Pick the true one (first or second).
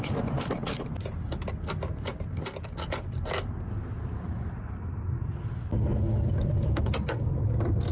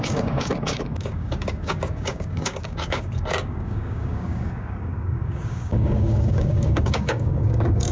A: first